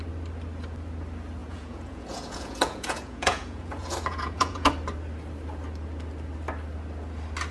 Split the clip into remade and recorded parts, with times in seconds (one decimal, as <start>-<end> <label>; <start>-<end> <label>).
0.0-1.4 recorded; 1.4-4.7 remade; 4.7-7.5 recorded